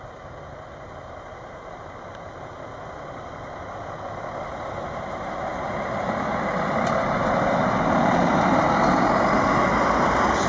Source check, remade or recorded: recorded